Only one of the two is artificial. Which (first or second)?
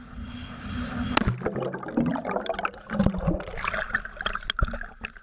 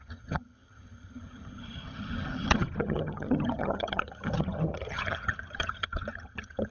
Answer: second